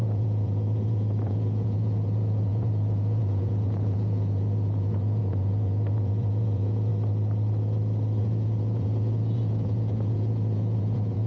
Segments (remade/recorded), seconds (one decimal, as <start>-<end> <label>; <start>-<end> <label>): 0.0-6.9 remade; 6.9-8.2 recorded; 8.2-11.3 remade